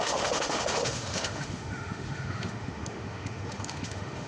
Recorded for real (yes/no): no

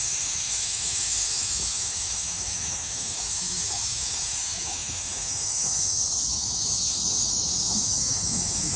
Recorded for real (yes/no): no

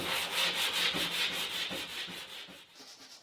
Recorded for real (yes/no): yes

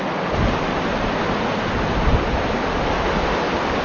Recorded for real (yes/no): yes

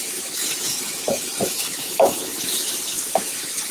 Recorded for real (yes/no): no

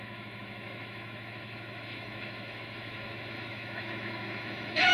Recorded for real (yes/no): no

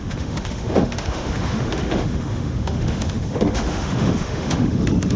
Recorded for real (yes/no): no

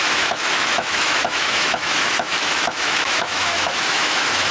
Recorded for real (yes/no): no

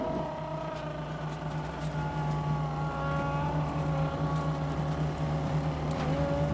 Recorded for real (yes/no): yes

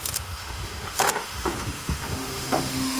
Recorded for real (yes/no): no